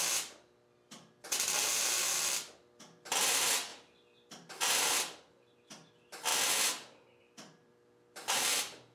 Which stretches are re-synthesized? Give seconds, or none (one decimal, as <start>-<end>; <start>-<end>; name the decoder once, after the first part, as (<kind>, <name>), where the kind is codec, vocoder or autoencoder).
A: 0.0-6.3 (vocoder, BigVGAN v2); 7.2-8.9